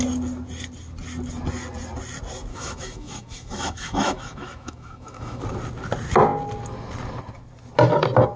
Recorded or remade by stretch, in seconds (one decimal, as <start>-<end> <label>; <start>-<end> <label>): 0.0-2.5 recorded; 2.5-5.4 remade; 5.4-8.4 recorded